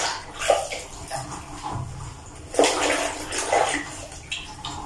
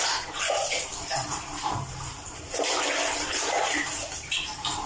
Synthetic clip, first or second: second